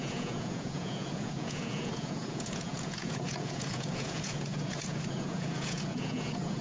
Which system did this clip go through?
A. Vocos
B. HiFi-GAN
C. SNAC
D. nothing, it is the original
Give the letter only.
A